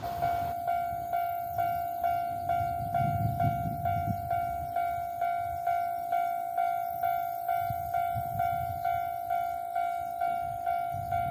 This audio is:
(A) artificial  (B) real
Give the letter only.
B